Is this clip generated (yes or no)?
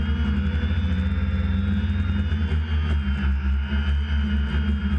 no